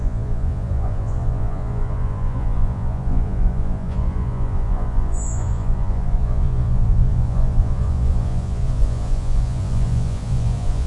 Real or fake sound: fake